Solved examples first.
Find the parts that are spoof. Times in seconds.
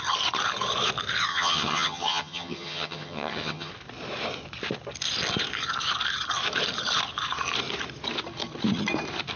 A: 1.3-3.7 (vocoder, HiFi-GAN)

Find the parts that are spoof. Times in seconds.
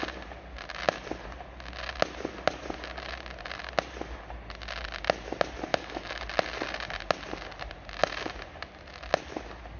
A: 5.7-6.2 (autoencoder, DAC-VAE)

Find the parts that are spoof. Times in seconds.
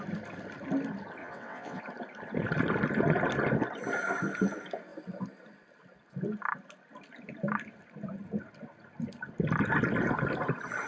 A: 1.2-1.8 (vocoder, WaveNeXt)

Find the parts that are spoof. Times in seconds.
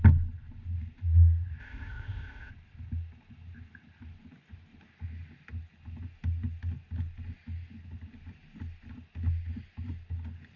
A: 1.6-2.5 (codec, ZipCodec)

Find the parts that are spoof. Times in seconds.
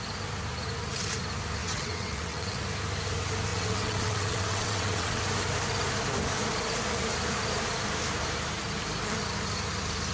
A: 1.6-2.6 (vocoder, WaveNeXt); 3.5-5.2